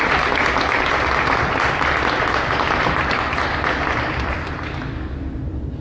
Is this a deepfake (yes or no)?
no